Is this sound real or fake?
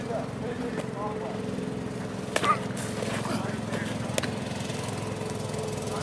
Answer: real